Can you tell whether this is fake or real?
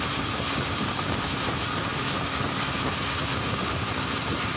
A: fake